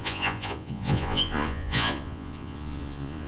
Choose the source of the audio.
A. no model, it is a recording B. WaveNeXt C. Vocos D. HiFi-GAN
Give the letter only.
C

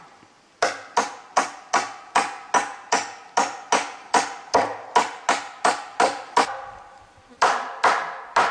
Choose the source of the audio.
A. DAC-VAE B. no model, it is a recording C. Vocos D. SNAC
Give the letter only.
B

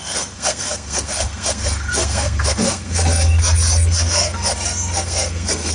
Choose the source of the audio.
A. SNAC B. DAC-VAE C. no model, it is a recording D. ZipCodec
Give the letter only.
A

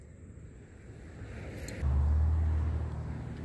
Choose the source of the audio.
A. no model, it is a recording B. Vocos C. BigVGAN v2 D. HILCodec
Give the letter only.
A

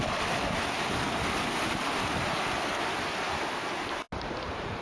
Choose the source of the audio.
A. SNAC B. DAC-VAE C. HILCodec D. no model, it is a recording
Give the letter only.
D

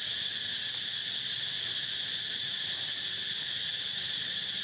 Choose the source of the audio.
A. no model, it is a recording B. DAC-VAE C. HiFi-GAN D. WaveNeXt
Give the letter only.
A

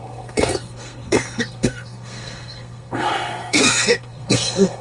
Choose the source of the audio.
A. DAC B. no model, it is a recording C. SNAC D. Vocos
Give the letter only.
C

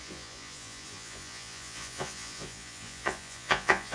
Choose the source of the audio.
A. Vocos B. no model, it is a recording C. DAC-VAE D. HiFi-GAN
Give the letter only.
A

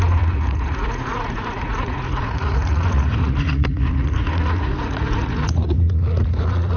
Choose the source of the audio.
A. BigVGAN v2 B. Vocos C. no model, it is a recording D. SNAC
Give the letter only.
B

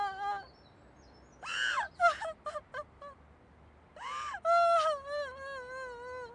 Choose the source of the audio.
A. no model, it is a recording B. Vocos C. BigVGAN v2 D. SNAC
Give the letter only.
A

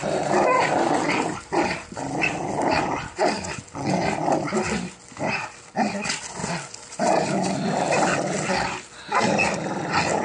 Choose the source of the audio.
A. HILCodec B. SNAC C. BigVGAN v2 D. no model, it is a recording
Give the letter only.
D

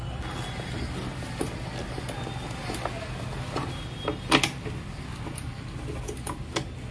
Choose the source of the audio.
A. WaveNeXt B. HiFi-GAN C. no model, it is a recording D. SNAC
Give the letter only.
C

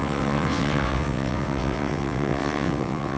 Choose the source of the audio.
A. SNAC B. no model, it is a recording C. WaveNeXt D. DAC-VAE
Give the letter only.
C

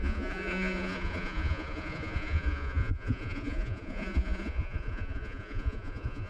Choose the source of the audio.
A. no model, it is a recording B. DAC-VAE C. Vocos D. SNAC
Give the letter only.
C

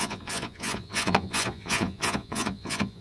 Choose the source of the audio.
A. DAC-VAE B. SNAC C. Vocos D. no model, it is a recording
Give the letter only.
C